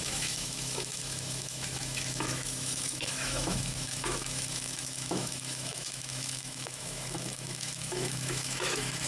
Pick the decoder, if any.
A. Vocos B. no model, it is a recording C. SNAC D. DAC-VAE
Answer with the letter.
D